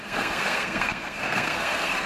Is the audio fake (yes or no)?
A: yes